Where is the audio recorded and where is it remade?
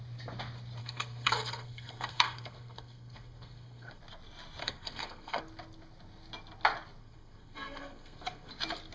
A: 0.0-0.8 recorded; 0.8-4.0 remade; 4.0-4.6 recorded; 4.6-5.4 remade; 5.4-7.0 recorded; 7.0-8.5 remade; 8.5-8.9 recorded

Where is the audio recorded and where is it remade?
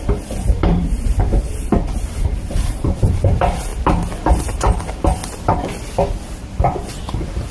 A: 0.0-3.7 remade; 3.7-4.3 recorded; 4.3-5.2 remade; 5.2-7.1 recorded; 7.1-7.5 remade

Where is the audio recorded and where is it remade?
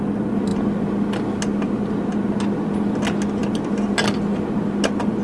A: 0.0-5.2 recorded